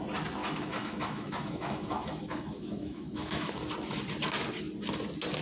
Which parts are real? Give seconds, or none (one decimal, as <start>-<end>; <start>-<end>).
0.0-0.4; 3.6-5.4